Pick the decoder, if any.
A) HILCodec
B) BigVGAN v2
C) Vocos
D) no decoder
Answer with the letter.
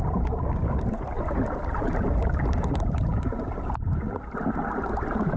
D